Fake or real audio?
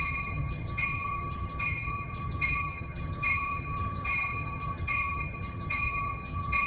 fake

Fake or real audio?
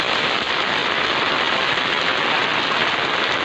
real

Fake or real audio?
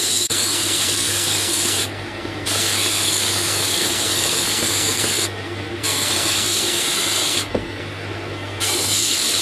fake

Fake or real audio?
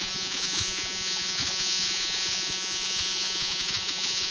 fake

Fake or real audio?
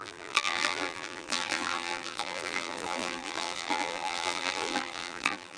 fake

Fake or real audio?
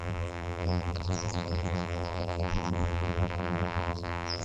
fake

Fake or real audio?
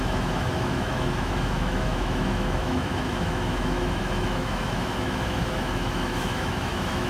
fake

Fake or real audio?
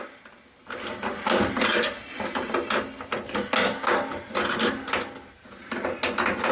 real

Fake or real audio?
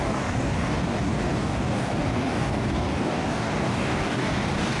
fake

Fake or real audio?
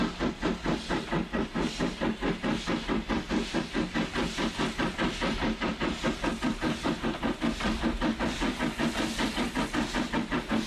real